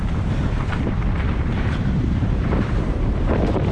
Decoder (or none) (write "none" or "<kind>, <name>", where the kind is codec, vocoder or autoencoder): vocoder, BigVGAN v2